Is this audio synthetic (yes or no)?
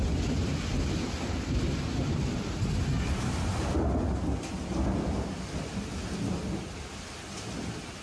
no